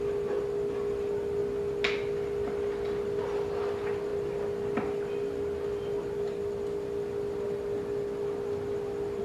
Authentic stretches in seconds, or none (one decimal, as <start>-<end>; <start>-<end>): 0.0-9.2